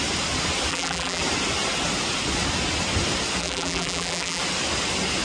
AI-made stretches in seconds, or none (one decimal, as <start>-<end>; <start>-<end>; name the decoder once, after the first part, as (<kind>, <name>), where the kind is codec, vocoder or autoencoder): 0.7-1.2 (vocoder, BigVGAN v2); 3.4-4.4